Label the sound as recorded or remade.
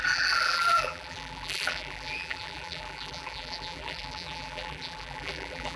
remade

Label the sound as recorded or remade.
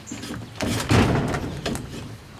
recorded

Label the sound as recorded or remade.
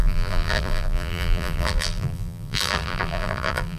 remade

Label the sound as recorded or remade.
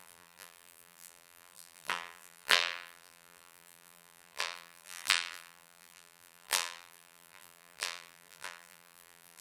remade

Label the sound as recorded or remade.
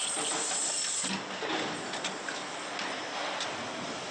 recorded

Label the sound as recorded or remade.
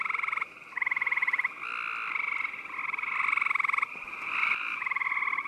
recorded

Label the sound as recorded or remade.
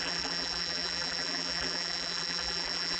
remade